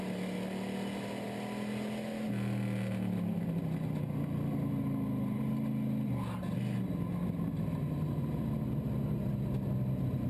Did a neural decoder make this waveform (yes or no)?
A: no